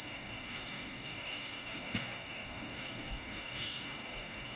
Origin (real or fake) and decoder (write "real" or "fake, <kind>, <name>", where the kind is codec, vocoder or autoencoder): fake, codec, DAC